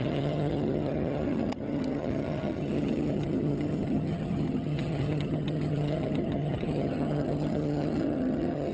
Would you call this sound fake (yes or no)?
yes